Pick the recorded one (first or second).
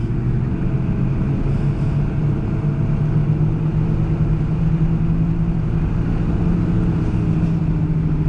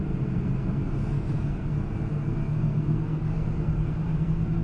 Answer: first